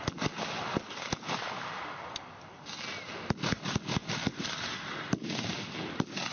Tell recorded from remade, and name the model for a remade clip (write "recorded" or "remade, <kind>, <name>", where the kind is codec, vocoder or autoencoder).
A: recorded